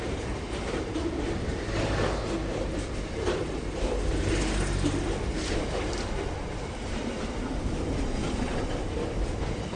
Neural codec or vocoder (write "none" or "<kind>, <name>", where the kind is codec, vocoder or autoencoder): none